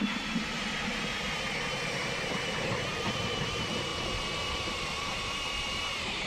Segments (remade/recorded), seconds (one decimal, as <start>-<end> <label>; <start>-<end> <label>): 0.0-0.9 remade; 0.9-2.0 recorded; 2.0-3.9 remade; 3.9-4.5 recorded; 4.5-6.3 remade